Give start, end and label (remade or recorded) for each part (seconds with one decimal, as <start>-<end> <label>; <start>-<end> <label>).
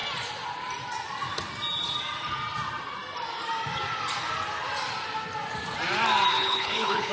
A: 0.0-6.3 recorded; 6.3-7.1 remade